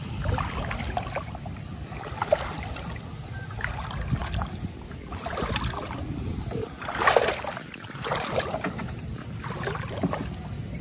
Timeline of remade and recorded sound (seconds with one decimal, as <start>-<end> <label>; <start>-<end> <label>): 0.0-10.8 recorded